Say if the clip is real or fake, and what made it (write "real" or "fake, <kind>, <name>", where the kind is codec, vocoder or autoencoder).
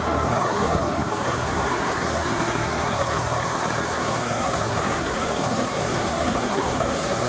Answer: fake, codec, SNAC